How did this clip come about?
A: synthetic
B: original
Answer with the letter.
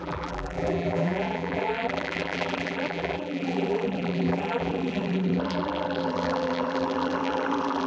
A